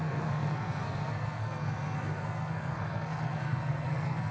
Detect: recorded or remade remade